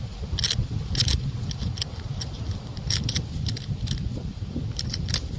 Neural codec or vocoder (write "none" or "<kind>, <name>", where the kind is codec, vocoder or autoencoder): none